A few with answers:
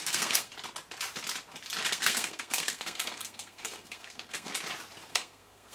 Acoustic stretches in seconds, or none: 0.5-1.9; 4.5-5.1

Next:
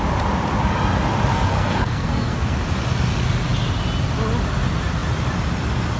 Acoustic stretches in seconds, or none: 0.0-1.3; 2.6-6.0

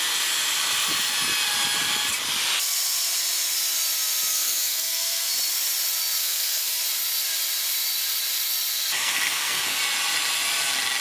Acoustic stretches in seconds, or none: 0.0-4.3; 5.3-6.2; 6.8-8.9; 9.8-11.0